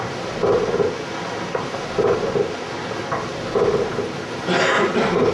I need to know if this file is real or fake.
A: real